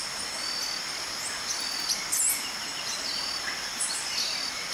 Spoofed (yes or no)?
no